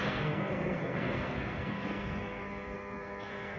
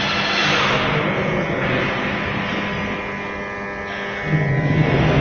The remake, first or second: first